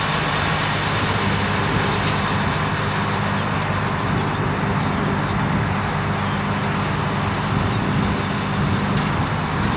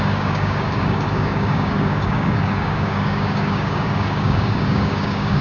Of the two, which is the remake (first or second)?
second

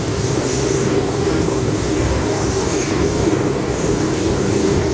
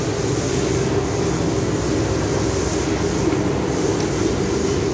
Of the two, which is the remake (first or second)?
first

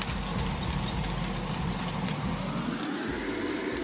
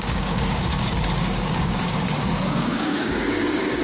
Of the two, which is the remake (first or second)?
second